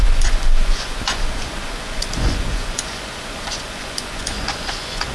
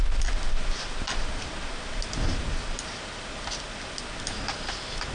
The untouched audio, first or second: second